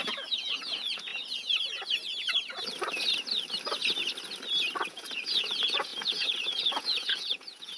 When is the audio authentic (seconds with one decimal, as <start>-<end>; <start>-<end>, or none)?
1.1-4.9